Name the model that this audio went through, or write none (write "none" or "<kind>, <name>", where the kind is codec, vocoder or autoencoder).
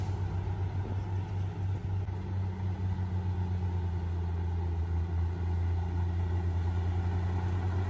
none